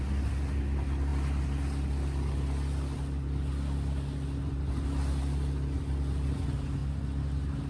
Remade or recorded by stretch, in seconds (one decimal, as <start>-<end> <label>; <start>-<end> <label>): 0.0-7.7 recorded